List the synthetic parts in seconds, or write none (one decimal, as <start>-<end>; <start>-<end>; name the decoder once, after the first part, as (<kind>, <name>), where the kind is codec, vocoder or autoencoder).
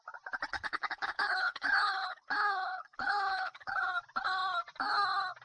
0.5-3.7 (codec, HILCodec)